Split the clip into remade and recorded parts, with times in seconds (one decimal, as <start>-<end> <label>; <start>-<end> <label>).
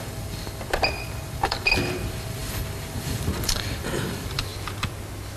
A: 0.0-4.5 remade; 4.5-5.4 recorded